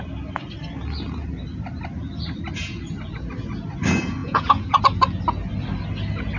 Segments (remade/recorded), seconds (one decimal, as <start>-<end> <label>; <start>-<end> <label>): 0.0-4.2 recorded; 4.2-4.8 remade; 4.8-6.4 recorded